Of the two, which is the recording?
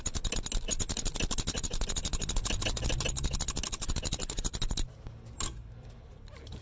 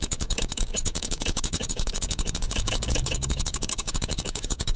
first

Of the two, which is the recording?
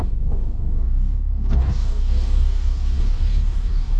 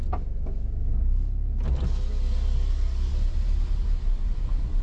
second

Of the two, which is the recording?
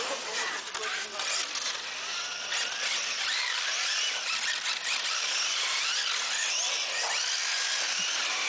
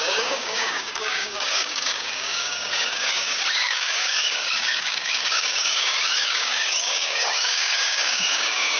first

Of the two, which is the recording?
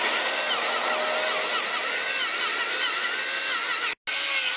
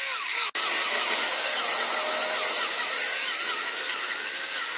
first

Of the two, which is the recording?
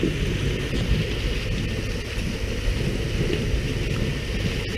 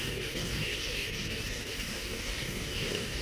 first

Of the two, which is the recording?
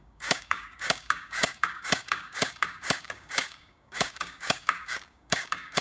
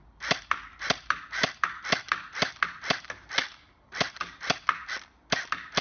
second